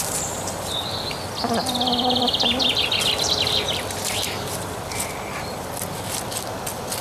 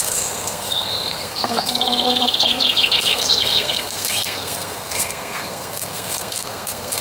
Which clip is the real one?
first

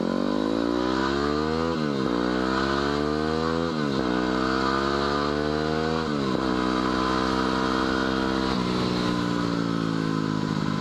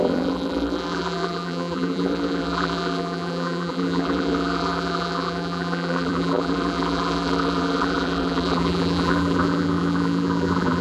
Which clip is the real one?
first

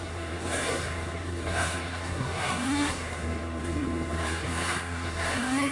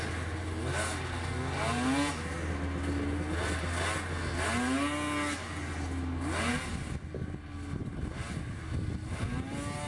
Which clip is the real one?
second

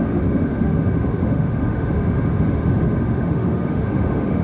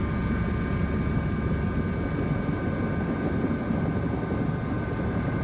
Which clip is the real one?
second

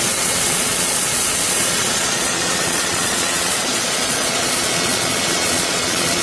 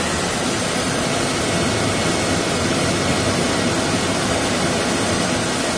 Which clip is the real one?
second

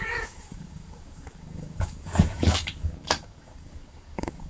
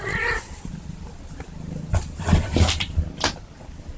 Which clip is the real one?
second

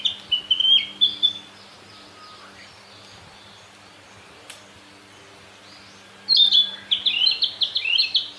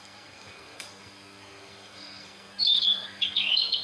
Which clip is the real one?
first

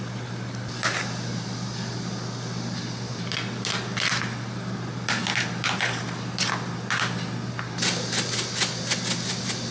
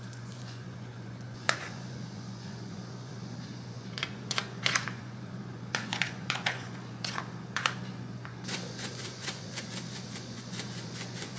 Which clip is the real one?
first